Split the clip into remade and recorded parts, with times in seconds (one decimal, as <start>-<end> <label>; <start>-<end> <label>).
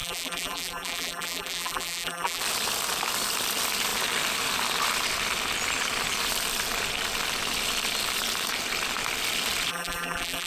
0.0-2.4 remade; 2.4-9.7 recorded; 9.7-10.5 remade